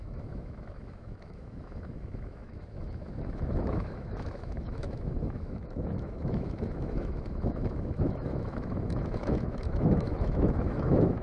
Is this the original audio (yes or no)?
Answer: no